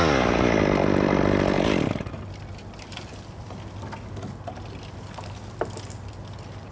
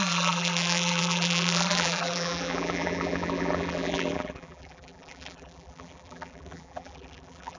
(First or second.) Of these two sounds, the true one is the first